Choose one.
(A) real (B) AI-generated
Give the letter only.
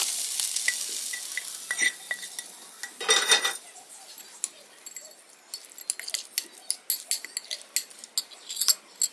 A